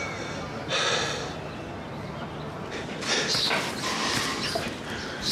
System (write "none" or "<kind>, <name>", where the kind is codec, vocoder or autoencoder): none